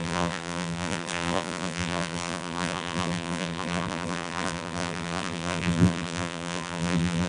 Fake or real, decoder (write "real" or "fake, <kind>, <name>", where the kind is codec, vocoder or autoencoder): fake, vocoder, BigVGAN v2